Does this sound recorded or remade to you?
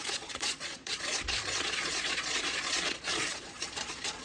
remade